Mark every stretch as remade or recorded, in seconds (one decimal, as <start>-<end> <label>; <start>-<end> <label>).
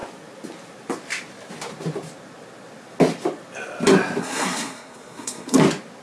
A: 0.0-4.2 recorded; 4.2-5.6 remade; 5.6-6.0 recorded